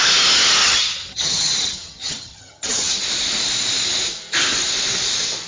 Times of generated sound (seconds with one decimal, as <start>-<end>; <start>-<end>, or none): 0.6-3.0